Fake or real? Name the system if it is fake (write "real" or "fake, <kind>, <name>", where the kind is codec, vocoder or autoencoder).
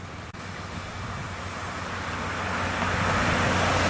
real